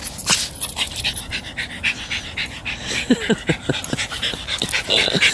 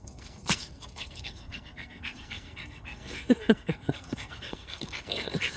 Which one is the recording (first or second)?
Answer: first